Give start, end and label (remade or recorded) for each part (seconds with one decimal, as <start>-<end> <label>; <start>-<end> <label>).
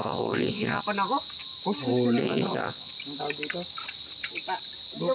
0.0-0.8 remade; 0.8-2.2 recorded; 2.2-2.9 remade; 2.9-5.1 recorded